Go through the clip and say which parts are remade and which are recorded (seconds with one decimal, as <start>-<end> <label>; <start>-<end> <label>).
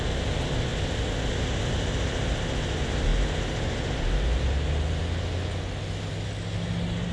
0.0-7.1 recorded